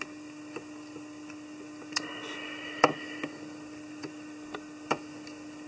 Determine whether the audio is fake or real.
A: real